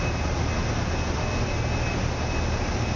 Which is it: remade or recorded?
recorded